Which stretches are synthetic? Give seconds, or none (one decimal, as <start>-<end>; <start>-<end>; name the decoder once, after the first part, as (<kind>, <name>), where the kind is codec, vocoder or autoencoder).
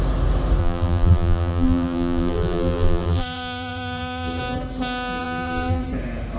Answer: 0.6-4.4 (vocoder, BigVGAN v2); 5.2-5.8